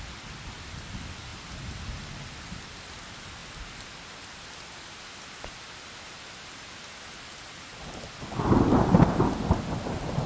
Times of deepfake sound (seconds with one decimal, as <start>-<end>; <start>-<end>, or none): none